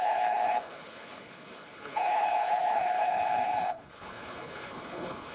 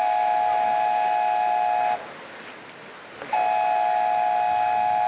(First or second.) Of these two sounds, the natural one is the second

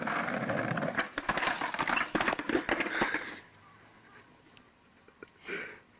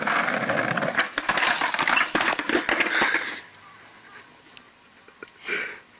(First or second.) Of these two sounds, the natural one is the second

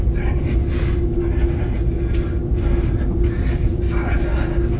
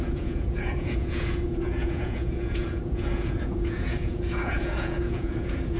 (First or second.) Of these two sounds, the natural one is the first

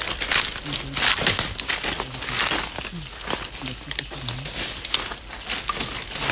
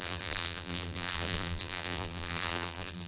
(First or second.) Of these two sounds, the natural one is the first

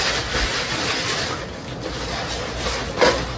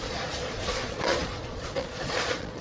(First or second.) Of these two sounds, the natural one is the first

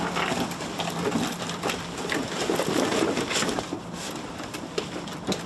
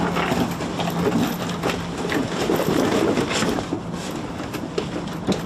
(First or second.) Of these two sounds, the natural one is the second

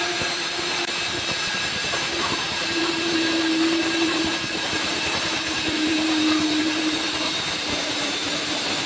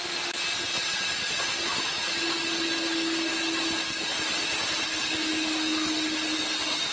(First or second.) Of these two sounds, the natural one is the second